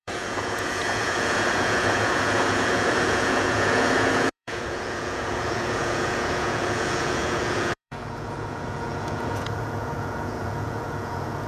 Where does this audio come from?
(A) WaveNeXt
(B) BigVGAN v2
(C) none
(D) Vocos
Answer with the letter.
D